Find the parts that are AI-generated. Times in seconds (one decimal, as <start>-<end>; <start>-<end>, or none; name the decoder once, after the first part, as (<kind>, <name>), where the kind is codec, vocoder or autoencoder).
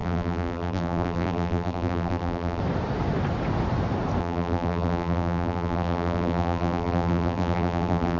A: 0.0-2.6 (vocoder, BigVGAN v2); 4.2-8.2